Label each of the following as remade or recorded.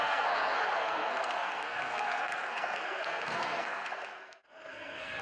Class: remade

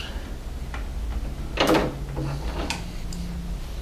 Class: recorded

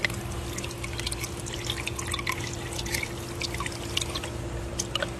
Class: recorded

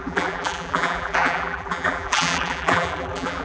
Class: remade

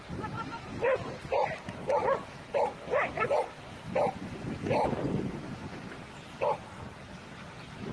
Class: recorded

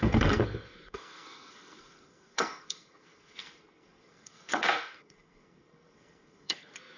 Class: remade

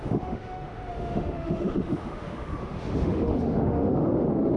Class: remade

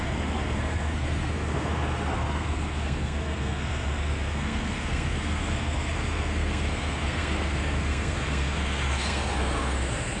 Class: remade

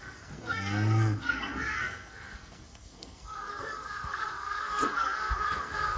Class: remade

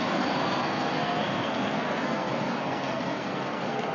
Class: remade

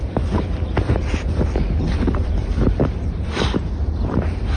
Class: remade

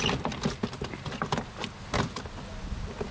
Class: recorded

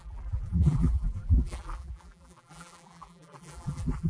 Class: remade